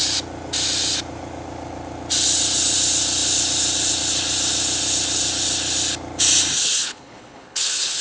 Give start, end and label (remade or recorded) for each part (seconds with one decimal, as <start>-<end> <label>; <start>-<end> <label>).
0.0-6.6 recorded; 6.6-8.0 remade